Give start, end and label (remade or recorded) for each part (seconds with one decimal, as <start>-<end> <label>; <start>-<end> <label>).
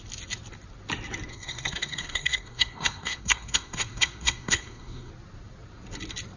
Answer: 0.0-1.3 recorded; 1.3-5.1 remade; 5.1-6.4 recorded